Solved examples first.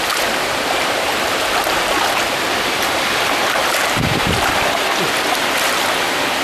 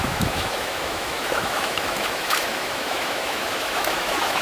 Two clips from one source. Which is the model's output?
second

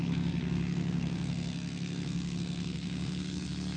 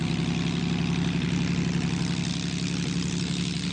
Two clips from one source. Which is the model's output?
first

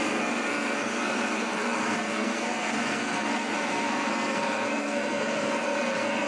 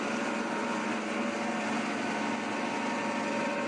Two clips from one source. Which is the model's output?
first